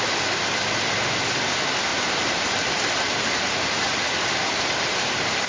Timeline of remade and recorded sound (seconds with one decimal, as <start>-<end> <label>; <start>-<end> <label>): 0.0-1.9 recorded; 1.9-5.5 remade